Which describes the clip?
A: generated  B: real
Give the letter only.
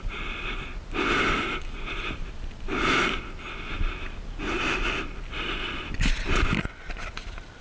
B